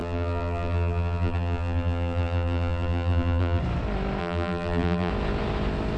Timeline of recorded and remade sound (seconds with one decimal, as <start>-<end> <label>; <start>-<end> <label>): 0.0-3.6 remade; 3.6-4.2 recorded; 4.2-5.1 remade; 5.1-6.0 recorded